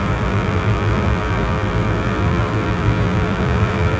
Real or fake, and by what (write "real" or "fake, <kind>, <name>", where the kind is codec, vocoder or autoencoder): fake, vocoder, BigVGAN v2